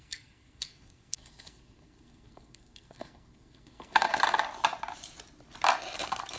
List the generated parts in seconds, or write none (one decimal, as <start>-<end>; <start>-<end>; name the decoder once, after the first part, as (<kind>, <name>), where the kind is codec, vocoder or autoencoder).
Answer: 0.0-4.1 (codec, SNAC)